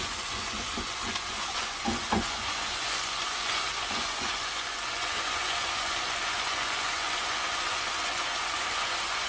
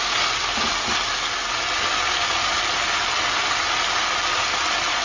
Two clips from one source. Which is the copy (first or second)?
first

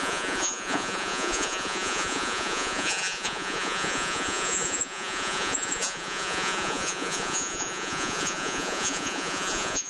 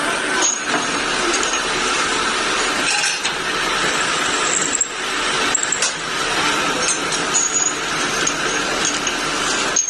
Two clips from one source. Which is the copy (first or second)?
first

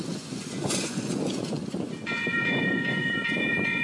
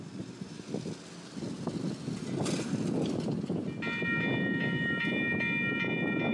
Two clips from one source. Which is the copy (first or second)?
first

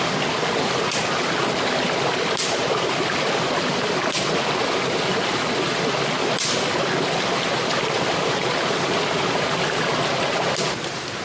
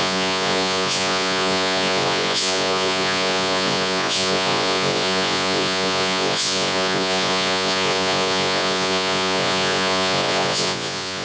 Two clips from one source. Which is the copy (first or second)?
second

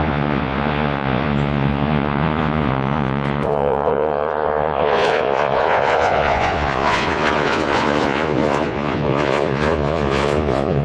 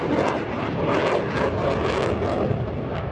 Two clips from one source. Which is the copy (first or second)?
first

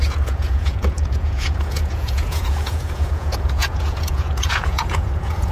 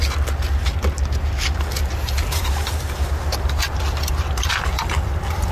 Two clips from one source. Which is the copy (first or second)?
first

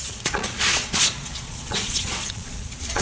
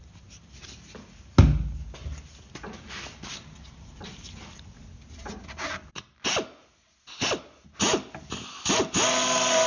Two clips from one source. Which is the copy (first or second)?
first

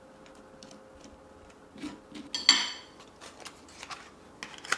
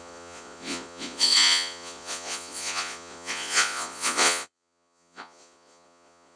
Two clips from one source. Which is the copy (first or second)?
second